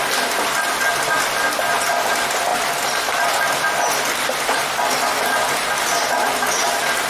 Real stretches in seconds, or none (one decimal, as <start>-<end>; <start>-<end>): 0.0-7.1